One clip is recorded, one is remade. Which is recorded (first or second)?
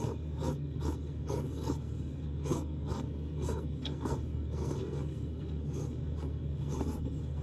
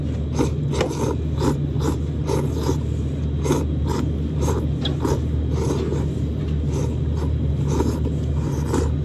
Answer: second